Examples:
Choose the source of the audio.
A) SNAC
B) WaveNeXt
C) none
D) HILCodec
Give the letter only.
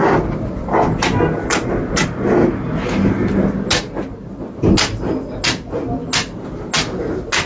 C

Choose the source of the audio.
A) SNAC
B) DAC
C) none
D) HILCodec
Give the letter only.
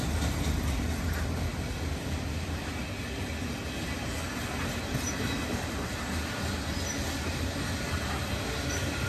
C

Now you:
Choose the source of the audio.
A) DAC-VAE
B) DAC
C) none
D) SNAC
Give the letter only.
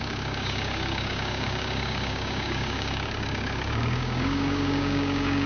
B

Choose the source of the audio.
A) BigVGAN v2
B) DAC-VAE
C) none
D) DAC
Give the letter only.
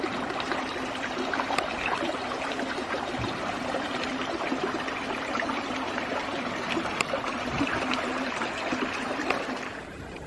A